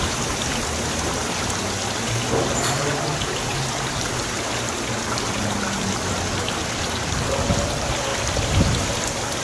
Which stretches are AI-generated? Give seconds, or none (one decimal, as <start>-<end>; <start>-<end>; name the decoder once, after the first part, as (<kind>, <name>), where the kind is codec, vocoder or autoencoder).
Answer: none